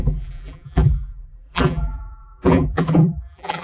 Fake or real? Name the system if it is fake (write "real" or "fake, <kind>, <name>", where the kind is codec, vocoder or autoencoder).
fake, vocoder, BigVGAN v2